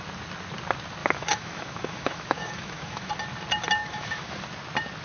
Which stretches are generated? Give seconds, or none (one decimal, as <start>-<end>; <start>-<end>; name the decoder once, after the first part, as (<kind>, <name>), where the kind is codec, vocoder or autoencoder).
1.0-3.1 (autoencoder, DAC-VAE); 3.8-4.3